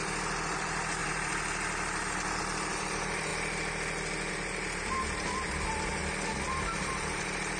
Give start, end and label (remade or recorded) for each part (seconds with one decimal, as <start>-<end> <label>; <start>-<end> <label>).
0.0-3.3 remade; 3.3-4.3 recorded; 4.3-6.0 remade; 6.0-6.8 recorded; 6.8-7.6 remade